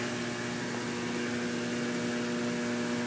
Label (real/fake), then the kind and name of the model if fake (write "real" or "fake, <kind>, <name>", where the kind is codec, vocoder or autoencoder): real